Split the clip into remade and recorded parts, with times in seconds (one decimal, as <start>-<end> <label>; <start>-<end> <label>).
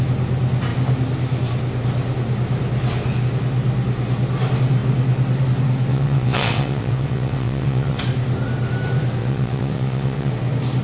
0.0-5.9 recorded; 5.9-8.0 remade; 8.0-9.2 recorded; 9.2-10.3 remade; 10.3-10.8 recorded